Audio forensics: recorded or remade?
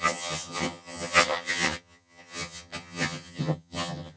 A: remade